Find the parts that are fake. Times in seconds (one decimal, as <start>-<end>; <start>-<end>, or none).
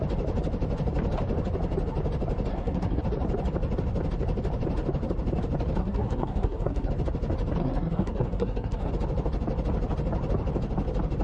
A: 2.5-3.0; 5.8-6.9; 7.6-8.9